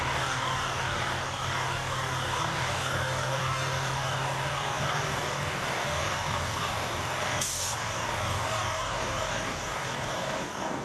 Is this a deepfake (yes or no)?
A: yes